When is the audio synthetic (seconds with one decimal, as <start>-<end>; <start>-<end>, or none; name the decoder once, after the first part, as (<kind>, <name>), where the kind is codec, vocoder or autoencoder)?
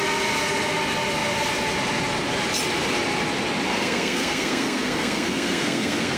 3.7-6.2 (codec, SNAC)